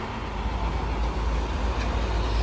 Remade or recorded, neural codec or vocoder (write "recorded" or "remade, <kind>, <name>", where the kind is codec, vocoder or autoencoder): recorded